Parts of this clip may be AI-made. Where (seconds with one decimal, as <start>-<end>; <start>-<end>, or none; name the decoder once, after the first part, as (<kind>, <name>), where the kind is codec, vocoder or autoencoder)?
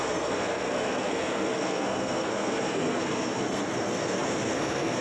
0.0-5.0 (codec, SNAC)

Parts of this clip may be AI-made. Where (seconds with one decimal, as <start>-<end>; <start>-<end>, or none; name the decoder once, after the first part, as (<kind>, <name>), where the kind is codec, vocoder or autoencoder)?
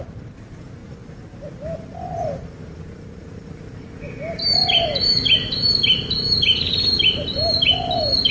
none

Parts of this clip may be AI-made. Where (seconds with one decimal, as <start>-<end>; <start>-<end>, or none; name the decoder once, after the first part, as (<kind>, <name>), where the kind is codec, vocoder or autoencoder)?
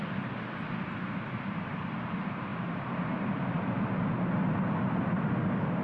none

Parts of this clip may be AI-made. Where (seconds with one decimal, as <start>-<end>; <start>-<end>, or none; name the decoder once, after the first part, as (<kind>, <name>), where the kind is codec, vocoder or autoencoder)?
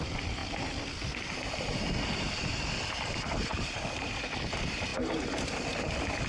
none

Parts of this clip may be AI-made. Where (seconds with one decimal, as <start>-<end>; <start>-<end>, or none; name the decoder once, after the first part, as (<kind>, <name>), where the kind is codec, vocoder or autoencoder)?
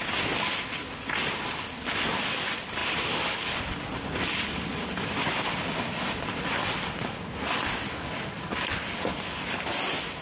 none